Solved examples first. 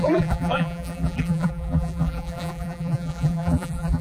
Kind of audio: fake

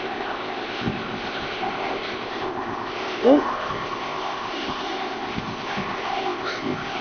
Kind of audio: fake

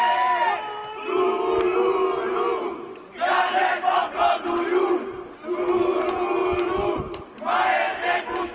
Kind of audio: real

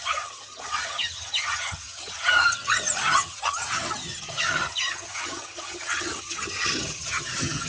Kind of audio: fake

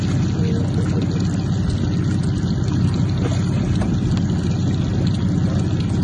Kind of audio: real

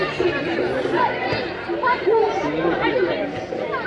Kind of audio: real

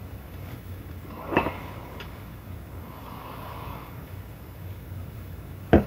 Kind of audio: fake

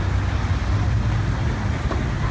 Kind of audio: real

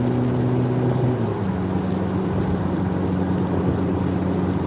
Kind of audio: real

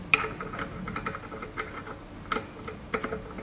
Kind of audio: real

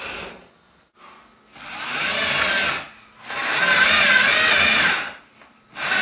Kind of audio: real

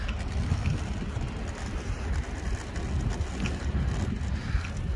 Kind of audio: real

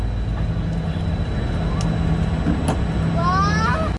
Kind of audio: real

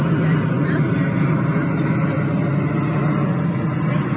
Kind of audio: real